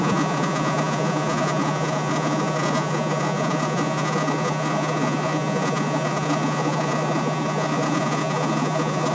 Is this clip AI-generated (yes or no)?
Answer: yes